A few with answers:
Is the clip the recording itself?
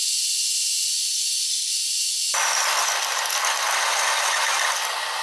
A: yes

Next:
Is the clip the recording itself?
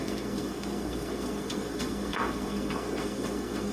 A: no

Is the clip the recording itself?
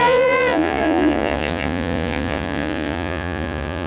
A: no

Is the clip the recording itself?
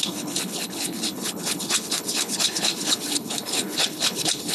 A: no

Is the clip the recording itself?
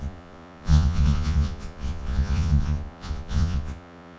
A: no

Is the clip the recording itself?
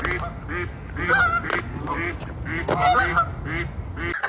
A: yes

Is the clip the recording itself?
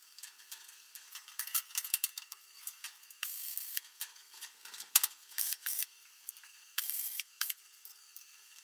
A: no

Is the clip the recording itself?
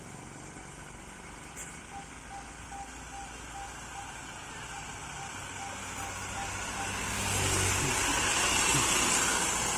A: yes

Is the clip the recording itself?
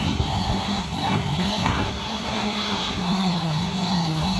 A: no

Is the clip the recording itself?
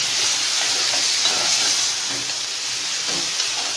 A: yes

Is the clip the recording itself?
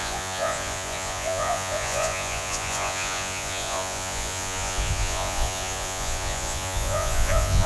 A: no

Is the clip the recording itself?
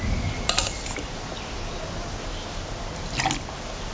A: yes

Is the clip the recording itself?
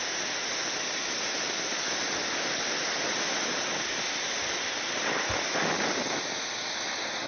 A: yes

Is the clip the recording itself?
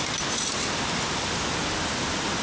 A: yes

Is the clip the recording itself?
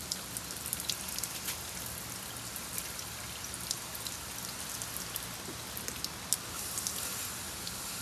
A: yes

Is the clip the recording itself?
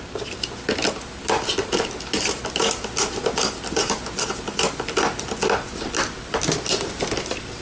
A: yes